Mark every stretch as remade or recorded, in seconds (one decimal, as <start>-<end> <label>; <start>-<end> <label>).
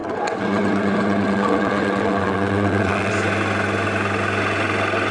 0.0-3.1 remade; 3.1-5.1 recorded